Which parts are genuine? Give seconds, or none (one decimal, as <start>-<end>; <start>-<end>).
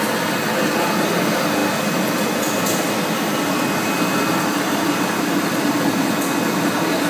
0.0-1.6; 5.9-7.1